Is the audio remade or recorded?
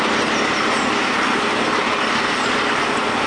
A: recorded